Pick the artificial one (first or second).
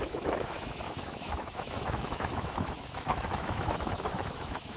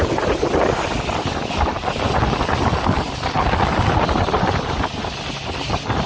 first